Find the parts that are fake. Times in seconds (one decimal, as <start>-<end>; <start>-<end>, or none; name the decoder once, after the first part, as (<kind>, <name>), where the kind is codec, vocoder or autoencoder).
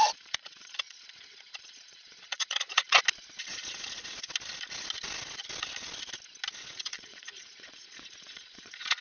0.0-3.0 (vocoder, Vocos); 3.5-4.3; 6.6-9.0